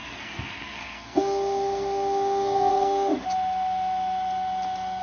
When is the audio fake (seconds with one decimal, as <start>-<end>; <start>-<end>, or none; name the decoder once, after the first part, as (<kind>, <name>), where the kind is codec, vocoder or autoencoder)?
0.0-3.1 (codec, SNAC)